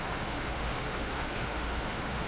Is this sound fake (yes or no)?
yes